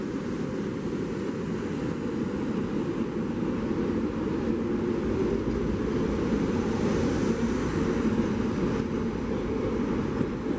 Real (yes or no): yes